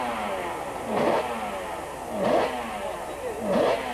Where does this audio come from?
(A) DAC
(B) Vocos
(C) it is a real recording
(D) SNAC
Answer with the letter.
C